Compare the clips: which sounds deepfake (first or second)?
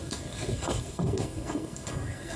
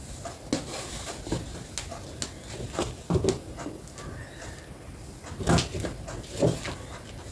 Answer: first